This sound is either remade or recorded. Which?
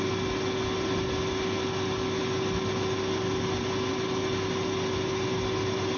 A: recorded